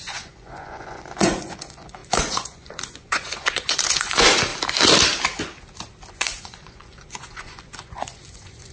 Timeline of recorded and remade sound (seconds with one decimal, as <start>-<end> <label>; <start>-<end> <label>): 0.0-4.5 remade; 4.5-6.1 recorded; 6.1-8.7 remade